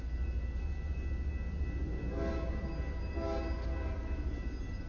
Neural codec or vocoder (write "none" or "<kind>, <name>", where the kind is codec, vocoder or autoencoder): none